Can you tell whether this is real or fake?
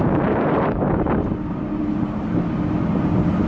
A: fake